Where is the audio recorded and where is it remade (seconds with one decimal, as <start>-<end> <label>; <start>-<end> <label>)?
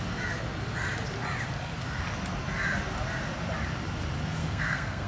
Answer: 0.0-4.4 recorded; 4.4-5.1 remade